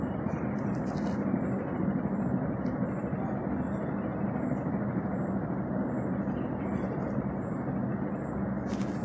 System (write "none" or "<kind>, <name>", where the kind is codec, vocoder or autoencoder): none